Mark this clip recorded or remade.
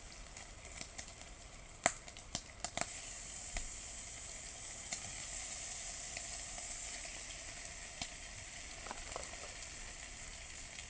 recorded